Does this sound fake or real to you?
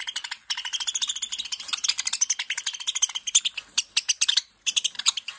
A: real